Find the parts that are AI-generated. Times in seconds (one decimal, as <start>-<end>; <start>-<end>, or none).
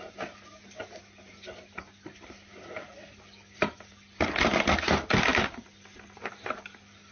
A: 2.9-4.3; 5.3-7.1